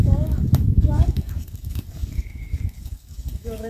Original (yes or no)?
no